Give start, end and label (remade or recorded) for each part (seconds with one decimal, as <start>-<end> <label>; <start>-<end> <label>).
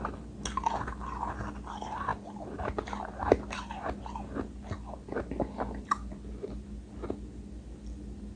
0.0-8.4 recorded